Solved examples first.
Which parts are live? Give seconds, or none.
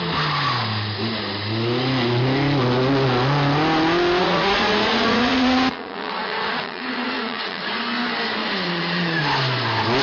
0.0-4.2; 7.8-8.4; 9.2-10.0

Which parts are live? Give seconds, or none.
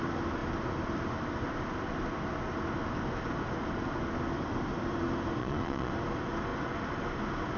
0.0-5.4; 5.9-7.6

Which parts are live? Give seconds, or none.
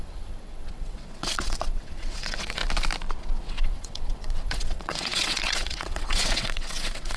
2.6-3.2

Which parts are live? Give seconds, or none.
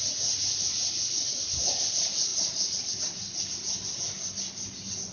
0.0-5.1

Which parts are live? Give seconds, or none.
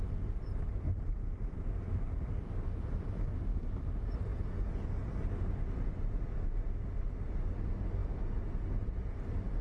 0.0-1.2; 2.3-9.6